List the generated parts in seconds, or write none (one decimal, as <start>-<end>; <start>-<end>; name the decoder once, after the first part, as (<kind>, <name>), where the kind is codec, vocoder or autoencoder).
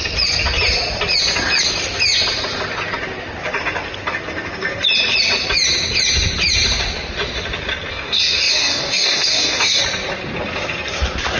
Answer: 7.9-9.8 (codec, DAC)